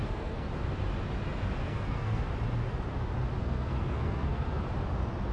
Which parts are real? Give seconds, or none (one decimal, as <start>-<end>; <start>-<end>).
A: 0.5-1.6; 2.2-3.4; 4.6-5.3